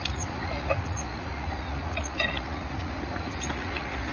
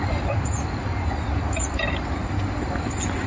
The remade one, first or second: first